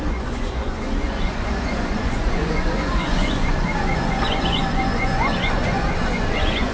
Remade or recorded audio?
remade